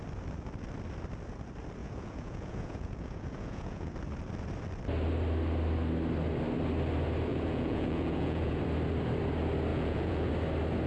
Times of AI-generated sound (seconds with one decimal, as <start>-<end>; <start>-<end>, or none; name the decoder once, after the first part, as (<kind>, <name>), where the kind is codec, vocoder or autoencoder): 1.8-3.9 (vocoder, Vocos); 7.3-8.6; 9.7-10.3